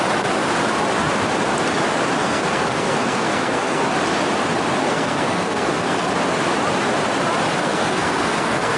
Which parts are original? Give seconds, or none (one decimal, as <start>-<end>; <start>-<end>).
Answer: 0.0-2.2; 3.8-4.8; 6.1-7.6